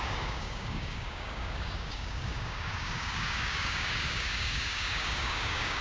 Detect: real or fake fake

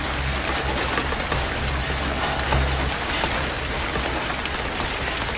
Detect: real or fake real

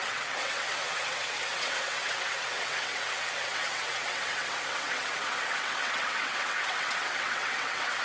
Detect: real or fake fake